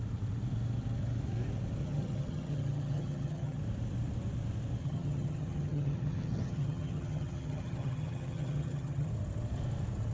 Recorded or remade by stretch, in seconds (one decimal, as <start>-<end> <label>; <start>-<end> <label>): 0.0-1.8 recorded; 1.8-3.6 remade; 3.6-4.8 recorded; 4.8-9.1 remade; 9.1-10.1 recorded